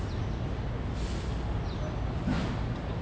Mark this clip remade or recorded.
recorded